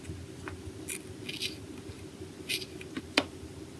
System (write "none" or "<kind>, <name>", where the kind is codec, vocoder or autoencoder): none